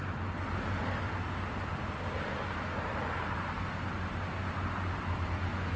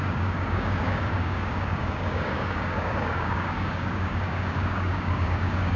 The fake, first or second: second